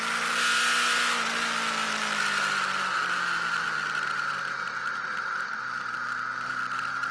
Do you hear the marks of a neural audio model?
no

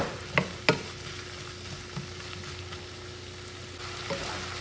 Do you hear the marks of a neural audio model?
no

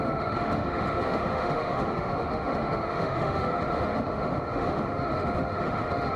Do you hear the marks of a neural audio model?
yes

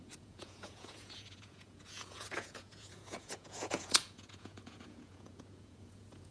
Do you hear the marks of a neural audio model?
yes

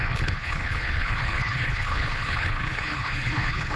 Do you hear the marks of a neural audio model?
yes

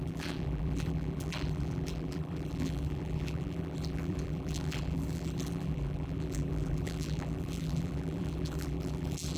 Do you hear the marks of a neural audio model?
yes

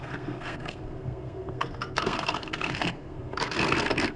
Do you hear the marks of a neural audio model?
yes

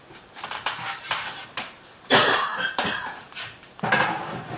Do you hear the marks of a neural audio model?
yes